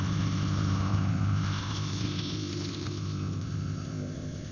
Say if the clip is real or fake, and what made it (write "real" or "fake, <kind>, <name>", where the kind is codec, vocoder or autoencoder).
fake, codec, ZipCodec